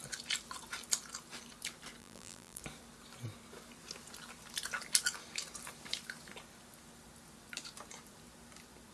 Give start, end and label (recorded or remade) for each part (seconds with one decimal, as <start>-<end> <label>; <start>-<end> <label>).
0.0-2.0 recorded; 2.0-2.6 remade; 2.6-8.9 recorded